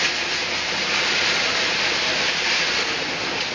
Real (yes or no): yes